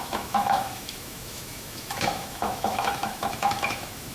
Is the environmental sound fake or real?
fake